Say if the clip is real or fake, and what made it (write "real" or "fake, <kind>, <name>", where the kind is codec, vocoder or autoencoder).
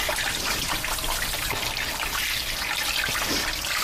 real